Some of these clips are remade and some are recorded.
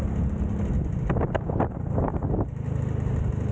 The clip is recorded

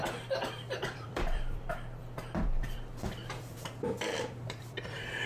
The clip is remade